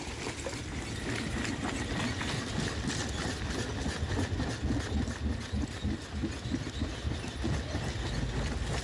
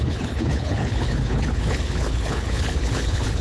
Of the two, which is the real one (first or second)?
first